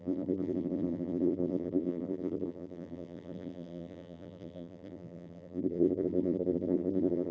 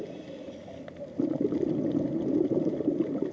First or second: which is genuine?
second